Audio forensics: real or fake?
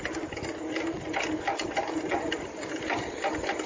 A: real